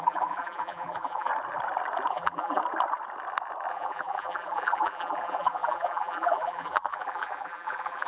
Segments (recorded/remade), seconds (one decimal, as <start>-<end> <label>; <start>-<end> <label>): 0.0-1.3 remade; 1.3-2.1 recorded; 2.1-2.6 remade; 2.6-3.7 recorded; 3.7-8.1 remade